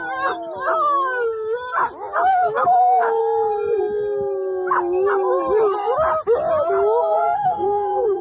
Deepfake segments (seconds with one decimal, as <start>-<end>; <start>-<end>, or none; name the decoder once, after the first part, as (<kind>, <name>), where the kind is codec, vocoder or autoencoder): 2.3-3.2 (codec, SNAC); 7.0-8.2